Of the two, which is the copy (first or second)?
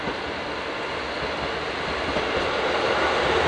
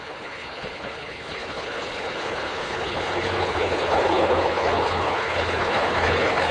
second